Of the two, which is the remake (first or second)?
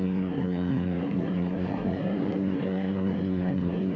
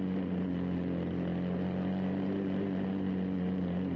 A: first